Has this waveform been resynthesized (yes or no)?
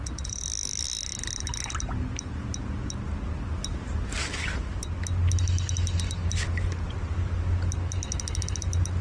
no